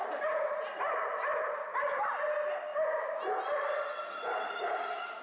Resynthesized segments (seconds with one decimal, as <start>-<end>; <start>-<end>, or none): 0.0-1.1; 1.7-2.2